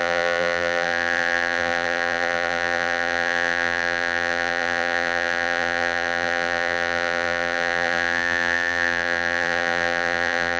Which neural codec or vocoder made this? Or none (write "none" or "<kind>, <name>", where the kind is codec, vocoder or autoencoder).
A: vocoder, BigVGAN v2